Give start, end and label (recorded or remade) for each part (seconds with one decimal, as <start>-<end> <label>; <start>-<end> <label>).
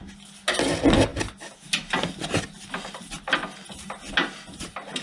0.0-5.0 recorded